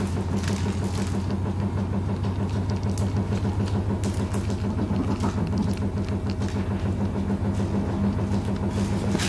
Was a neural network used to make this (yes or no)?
no